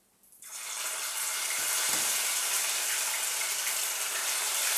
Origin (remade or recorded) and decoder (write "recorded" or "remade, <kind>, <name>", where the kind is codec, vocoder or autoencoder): recorded